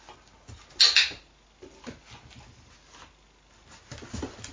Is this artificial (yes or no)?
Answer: no